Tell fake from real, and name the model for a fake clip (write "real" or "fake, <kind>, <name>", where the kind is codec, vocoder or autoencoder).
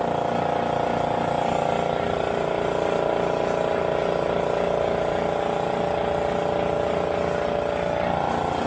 real